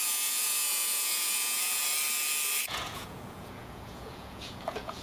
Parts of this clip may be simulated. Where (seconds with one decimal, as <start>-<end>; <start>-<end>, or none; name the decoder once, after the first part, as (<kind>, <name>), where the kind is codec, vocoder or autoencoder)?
0.0-1.8 (vocoder, Vocos); 2.6-5.0